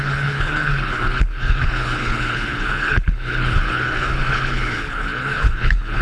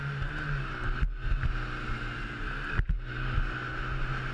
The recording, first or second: second